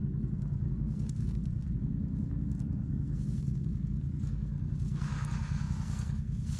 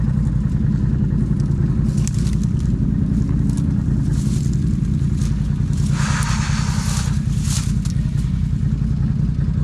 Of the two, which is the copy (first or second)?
first